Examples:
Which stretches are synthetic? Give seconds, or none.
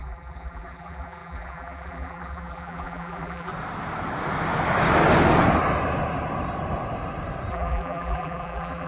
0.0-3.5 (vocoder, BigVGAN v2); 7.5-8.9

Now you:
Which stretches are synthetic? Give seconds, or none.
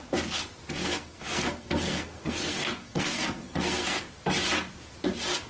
0.8-4.1 (codec, SNAC)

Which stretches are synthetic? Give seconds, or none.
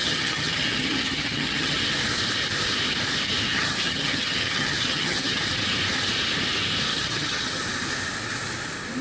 0.0-1.8 (vocoder, HiFi-GAN); 3.5-5.4; 6.9-7.6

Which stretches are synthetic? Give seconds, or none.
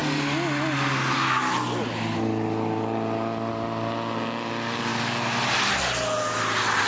none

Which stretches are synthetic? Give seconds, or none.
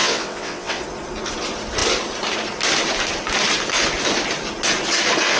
0.0-0.8 (vocoder, WaveNeXt)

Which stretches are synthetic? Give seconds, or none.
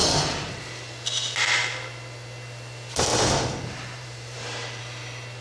3.1-4.8 (vocoder, BigVGAN v2)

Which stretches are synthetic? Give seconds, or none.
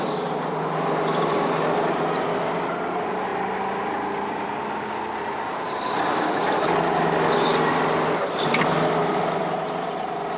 none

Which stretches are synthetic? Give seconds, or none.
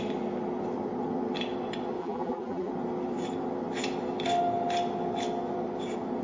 2.0-2.7 (vocoder, BigVGAN v2)